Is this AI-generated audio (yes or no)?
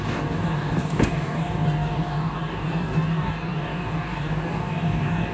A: yes